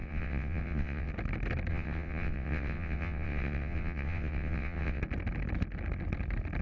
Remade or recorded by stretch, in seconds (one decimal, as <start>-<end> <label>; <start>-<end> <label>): 0.0-1.1 remade; 1.1-1.7 recorded; 1.7-5.0 remade; 5.0-6.6 recorded